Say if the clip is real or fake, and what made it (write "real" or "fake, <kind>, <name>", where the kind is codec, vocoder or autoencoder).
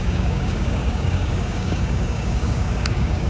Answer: fake, codec, DAC